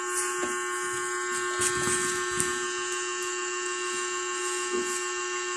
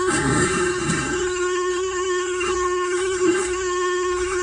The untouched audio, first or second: first